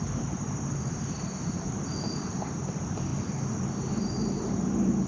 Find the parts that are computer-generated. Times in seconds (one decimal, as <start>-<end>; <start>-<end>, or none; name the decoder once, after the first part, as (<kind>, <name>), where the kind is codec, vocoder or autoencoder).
0.0-3.1 (vocoder, BigVGAN v2); 3.9-5.1